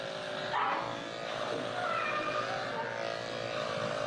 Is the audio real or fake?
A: real